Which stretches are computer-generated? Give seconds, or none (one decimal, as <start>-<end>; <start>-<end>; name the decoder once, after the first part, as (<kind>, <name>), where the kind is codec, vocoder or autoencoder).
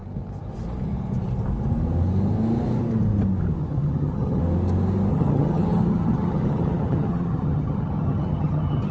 3.6-4.4 (vocoder, HiFi-GAN); 5.1-8.9